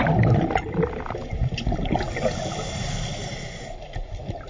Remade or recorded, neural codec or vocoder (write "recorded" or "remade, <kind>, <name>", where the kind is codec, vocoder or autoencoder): recorded